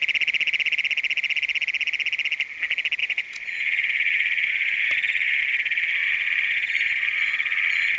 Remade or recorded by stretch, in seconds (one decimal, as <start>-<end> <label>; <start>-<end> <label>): 0.0-3.0 recorded; 3.0-5.4 remade; 5.4-6.0 recorded; 6.0-8.0 remade